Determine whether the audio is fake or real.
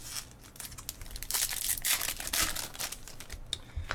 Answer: real